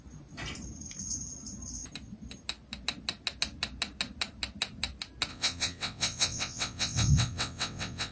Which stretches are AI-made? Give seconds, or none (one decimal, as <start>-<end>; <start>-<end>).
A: 5.3-8.1